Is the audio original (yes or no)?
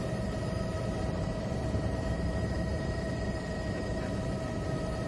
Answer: no